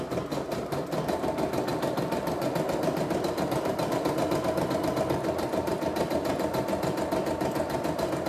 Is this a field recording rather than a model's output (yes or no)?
yes